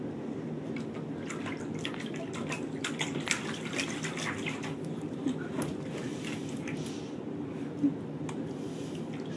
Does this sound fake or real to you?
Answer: real